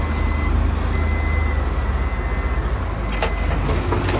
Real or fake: real